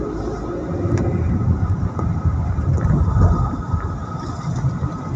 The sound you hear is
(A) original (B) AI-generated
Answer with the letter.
A